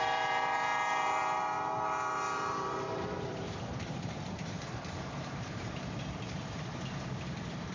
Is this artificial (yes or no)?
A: yes